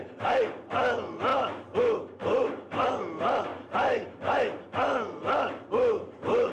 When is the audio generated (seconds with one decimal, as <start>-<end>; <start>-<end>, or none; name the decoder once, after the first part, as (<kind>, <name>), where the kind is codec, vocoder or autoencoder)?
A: 2.2-2.9 (vocoder, BigVGAN v2); 3.5-5.7